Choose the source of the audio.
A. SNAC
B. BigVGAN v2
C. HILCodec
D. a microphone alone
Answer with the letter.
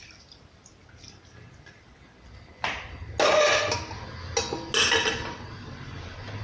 D